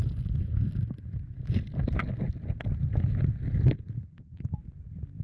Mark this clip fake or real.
real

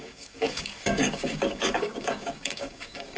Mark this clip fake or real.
fake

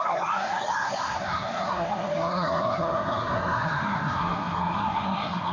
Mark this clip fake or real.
fake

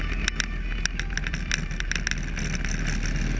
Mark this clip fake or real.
real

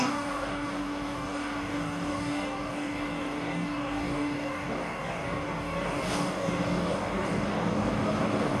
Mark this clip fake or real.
fake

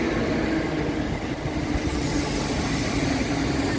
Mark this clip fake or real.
real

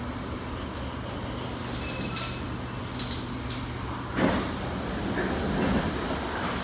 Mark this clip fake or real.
real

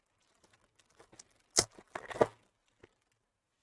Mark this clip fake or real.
real